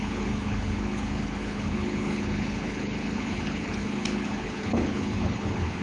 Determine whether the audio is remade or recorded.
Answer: remade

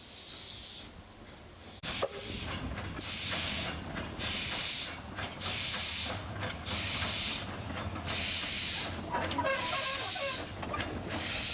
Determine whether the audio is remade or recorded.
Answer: recorded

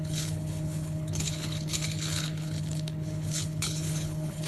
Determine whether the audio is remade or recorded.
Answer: remade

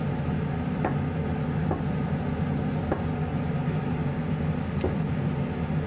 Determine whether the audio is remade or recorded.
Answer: recorded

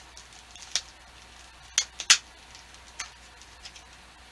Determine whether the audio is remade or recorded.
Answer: recorded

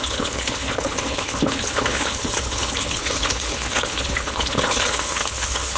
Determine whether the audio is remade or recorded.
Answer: remade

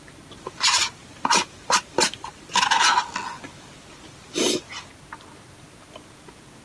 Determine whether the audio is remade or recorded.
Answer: recorded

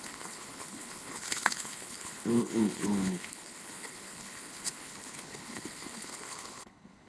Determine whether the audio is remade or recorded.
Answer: remade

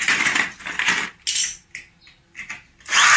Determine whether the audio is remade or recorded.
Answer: recorded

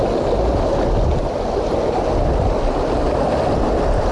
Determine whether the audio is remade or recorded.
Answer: recorded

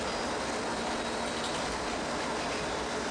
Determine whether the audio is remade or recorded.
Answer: recorded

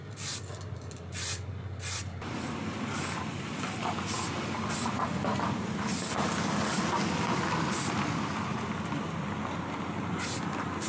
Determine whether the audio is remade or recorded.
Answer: recorded